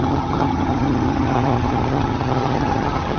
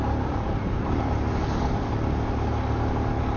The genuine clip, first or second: second